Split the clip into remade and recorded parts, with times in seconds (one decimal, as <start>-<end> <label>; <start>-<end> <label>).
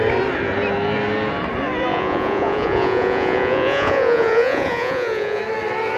0.0-1.9 recorded; 1.9-5.4 remade; 5.4-6.0 recorded